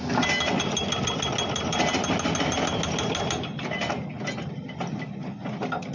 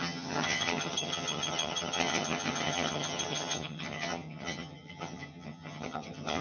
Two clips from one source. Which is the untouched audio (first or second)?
first